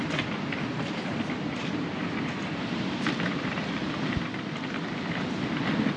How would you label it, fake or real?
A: fake